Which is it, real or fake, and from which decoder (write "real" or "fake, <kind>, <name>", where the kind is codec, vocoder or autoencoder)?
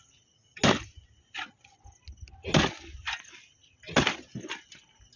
real